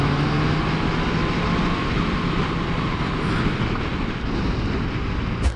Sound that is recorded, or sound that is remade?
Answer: recorded